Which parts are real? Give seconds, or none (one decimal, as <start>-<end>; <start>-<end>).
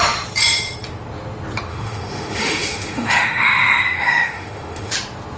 0.0-1.7; 4.9-5.4